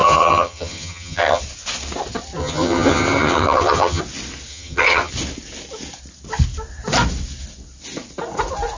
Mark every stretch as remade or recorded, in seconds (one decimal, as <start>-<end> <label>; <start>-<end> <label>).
0.0-1.4 remade; 1.4-2.4 recorded; 2.4-4.0 remade; 4.0-4.5 recorded; 4.5-5.1 remade; 5.1-8.8 recorded